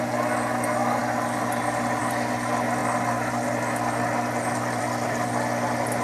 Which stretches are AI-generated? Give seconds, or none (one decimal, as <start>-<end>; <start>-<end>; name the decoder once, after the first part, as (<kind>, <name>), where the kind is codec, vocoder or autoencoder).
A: none